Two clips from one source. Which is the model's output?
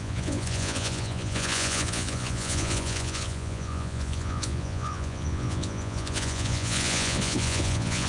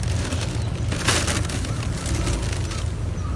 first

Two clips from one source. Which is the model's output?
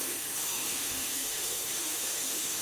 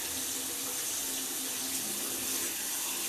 first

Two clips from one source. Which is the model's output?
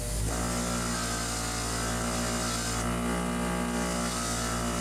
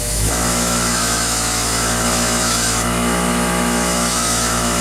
second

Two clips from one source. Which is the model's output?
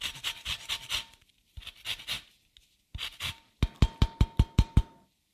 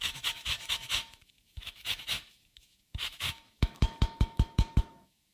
second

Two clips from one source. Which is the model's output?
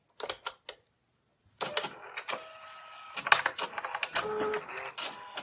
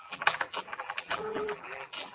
second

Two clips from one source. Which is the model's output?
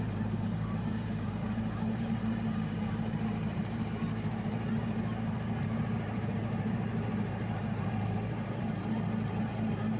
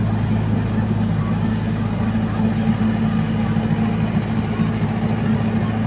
first